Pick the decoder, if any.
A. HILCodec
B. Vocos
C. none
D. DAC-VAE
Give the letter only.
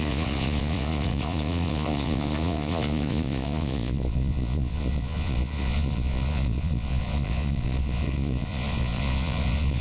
B